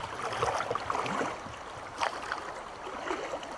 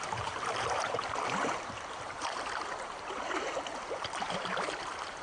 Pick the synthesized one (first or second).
second